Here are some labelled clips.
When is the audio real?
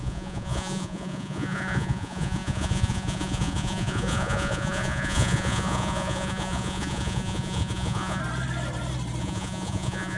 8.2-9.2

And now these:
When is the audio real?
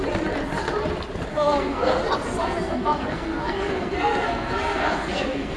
0.0-1.3; 2.0-2.4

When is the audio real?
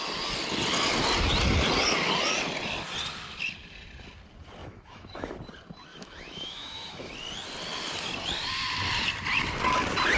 0.0-4.6; 5.4-5.9; 7.1-10.2